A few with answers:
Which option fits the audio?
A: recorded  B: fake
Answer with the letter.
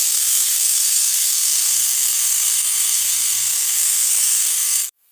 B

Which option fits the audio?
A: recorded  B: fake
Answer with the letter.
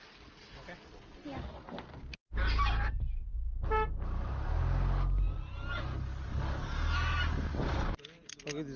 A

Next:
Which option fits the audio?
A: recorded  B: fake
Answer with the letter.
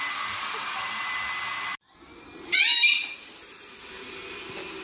A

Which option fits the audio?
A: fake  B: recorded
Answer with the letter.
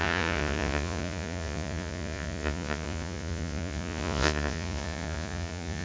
A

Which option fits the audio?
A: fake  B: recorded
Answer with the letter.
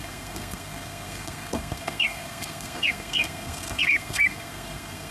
A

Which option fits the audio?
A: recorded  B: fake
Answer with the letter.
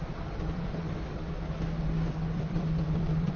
B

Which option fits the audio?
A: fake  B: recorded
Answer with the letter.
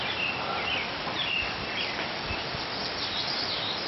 A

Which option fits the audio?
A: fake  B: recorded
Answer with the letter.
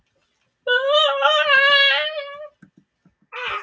B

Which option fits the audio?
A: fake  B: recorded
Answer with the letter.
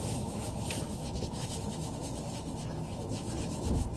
A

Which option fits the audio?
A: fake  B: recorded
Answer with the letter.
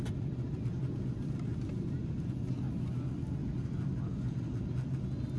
B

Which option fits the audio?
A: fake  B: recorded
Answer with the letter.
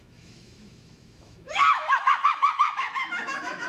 A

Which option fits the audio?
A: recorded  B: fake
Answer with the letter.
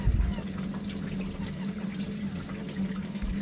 A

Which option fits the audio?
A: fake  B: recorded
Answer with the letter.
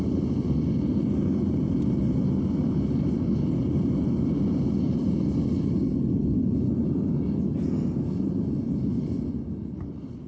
B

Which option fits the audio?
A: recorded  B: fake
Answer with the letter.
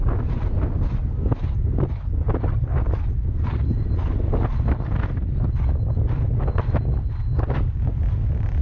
A